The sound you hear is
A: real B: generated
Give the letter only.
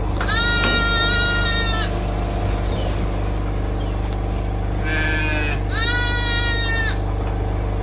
A